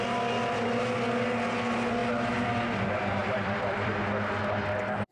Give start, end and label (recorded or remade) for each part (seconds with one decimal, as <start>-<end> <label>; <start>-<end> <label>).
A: 0.0-3.2 recorded; 3.2-3.9 remade; 3.9-5.1 recorded